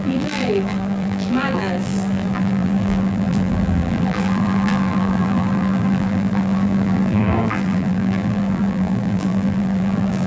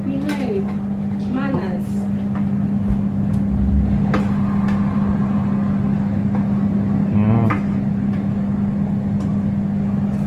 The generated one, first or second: first